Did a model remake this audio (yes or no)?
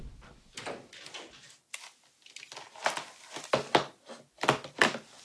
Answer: no